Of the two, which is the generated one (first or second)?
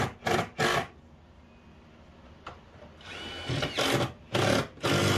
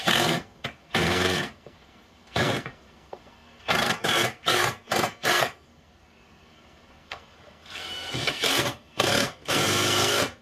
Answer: second